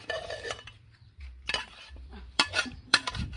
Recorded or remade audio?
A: remade